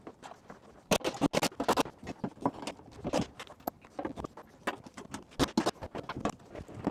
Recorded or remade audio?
recorded